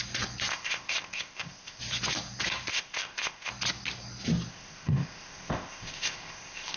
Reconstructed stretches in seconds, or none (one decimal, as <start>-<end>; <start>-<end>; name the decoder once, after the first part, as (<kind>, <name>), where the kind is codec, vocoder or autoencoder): 0.5-1.8 (codec, ZipCodec); 2.7-3.5; 4.5-6.8